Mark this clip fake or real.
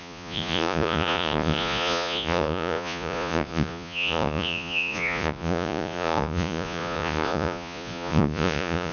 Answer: fake